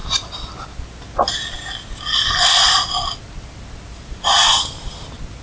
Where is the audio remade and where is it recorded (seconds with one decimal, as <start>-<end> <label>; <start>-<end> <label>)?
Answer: 0.0-5.4 recorded